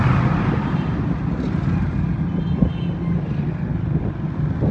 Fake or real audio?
real